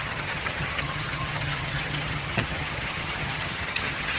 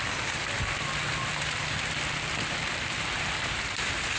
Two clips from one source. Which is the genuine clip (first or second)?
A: second